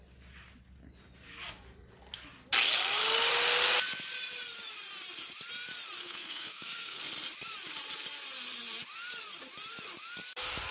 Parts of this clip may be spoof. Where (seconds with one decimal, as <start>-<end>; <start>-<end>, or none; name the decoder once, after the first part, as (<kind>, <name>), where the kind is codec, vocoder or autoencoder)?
6.0-7.0 (codec, SNAC)